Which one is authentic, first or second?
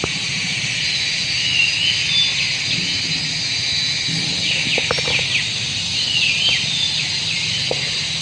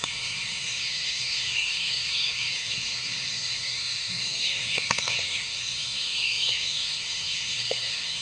first